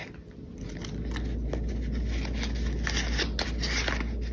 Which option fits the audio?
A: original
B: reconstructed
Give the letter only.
A